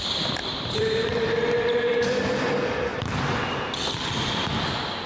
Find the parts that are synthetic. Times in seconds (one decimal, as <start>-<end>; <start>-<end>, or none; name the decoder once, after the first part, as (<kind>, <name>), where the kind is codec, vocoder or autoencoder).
0.4-2.4 (vocoder, BigVGAN v2)